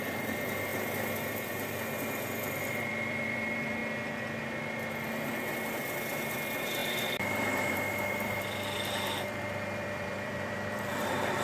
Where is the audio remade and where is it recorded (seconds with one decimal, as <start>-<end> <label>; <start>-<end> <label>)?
0.0-3.8 remade; 3.8-5.5 recorded; 5.5-11.4 remade